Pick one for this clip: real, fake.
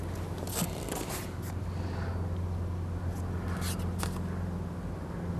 real